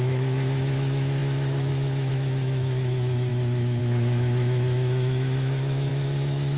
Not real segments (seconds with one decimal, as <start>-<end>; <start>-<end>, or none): 0.0-6.6